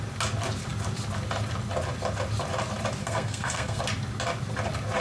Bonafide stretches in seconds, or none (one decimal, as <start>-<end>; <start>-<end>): 0.0-3.0; 3.8-5.0